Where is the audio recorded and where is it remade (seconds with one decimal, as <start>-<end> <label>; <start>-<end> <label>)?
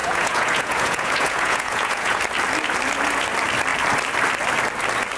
0.0-2.2 remade; 2.2-5.2 recorded